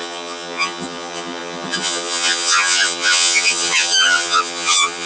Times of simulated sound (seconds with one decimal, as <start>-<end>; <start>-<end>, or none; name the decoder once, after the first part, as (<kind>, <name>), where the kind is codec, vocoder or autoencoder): 0.0-5.1 (vocoder, HiFi-GAN)